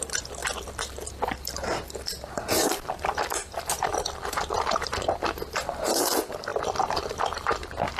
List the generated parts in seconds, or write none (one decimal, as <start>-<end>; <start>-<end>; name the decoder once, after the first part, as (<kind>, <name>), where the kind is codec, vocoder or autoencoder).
0.0-8.0 (vocoder, BigVGAN v2)